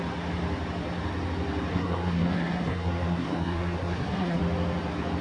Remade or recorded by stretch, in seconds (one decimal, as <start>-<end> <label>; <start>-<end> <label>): 0.0-1.7 recorded; 1.7-4.4 remade; 4.4-5.2 recorded